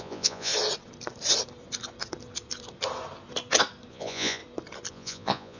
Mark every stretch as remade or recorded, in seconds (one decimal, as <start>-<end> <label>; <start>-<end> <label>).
0.0-0.5 remade; 0.5-3.9 recorded; 3.9-4.4 remade; 4.4-4.9 recorded; 4.9-5.6 remade